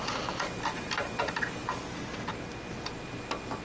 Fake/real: real